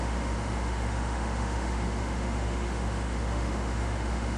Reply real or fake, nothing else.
fake